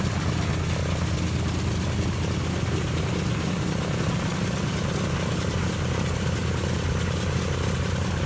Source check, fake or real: real